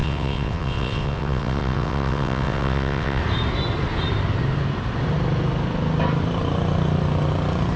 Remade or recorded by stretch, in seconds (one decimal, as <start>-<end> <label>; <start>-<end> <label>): 0.0-3.2 remade; 3.2-7.8 recorded